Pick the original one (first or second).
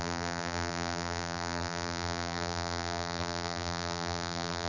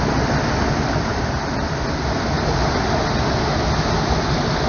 second